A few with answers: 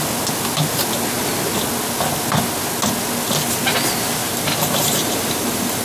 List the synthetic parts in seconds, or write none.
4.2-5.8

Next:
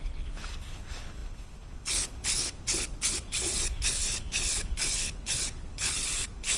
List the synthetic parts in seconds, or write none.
0.0-6.6

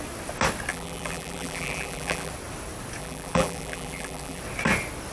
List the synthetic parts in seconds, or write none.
0.7-2.3; 3.0-4.4

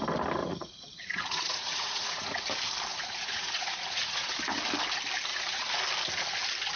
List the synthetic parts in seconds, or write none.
0.4-2.4; 2.9-4.4; 5.3-5.8

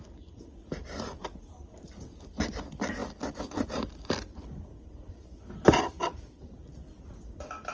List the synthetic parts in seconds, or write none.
none

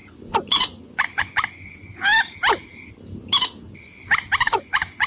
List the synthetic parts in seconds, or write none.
0.0-1.9; 4.4-5.1